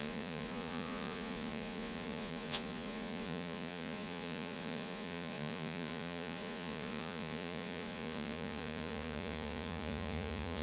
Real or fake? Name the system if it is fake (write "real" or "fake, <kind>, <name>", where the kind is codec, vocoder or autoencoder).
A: fake, vocoder, Vocos